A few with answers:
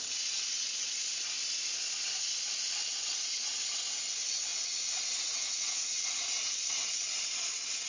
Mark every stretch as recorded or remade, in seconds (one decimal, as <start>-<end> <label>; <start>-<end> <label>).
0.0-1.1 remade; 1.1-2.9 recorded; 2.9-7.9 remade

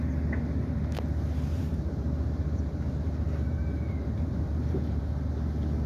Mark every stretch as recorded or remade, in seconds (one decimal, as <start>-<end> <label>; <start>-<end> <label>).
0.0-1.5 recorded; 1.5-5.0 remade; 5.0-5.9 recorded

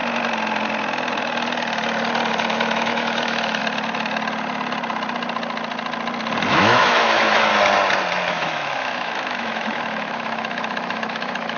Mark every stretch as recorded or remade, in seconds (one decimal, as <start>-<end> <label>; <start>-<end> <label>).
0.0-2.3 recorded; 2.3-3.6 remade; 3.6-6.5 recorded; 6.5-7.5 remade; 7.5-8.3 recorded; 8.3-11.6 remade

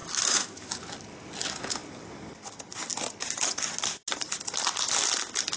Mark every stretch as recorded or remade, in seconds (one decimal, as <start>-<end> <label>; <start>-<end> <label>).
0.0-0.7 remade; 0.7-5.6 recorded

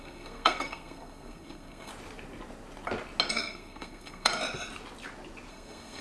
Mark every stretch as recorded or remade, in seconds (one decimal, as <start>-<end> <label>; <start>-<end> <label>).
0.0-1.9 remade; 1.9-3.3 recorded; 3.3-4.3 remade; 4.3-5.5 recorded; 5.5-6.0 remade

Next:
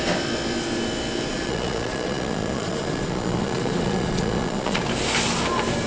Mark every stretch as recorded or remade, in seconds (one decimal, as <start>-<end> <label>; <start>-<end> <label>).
0.0-1.3 recorded; 1.3-4.8 remade; 4.8-5.9 recorded